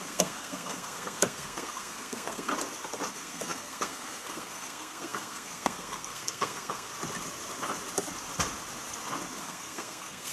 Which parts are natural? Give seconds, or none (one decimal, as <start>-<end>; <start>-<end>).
2.5-3.1; 6.9-9.4